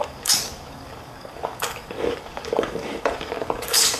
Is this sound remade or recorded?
remade